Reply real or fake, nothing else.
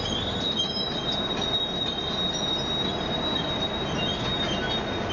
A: real